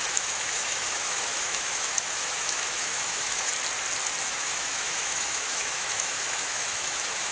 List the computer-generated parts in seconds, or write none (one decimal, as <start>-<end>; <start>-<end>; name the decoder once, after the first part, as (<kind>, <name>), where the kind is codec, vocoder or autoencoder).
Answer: 0.0-3.5 (autoencoder, DAC-VAE); 4.2-7.3